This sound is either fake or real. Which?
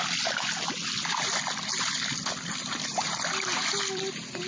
real